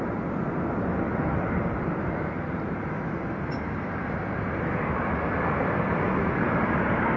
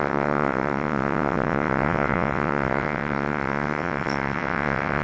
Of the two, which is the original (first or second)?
first